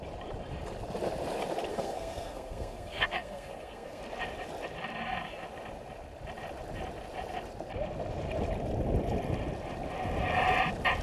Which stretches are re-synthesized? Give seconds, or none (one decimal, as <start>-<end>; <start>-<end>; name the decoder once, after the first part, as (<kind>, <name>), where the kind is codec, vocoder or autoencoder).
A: 1.7-4.0 (codec, SNAC)